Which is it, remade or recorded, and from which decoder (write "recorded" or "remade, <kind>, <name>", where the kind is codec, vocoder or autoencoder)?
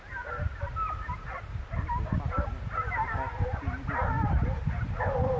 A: recorded